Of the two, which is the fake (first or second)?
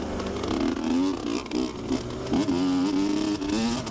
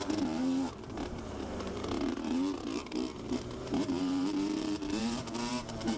second